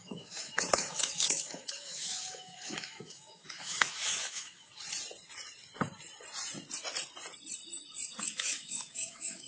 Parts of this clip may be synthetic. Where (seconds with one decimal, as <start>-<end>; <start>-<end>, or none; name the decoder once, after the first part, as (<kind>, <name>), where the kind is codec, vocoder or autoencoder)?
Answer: 0.0-4.7 (autoencoder, DAC-VAE); 8.2-9.5